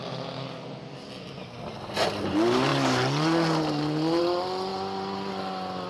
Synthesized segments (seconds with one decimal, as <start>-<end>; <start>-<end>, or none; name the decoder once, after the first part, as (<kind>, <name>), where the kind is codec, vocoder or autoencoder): none